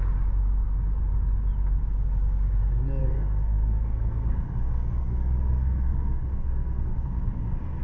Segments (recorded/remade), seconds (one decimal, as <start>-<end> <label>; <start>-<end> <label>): 0.0-3.0 recorded; 3.0-7.8 remade